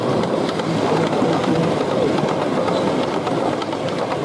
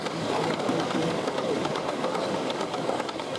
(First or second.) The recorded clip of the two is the first